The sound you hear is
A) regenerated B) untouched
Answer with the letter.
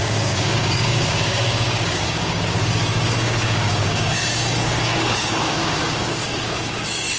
A